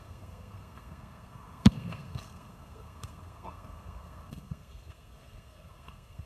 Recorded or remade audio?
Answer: remade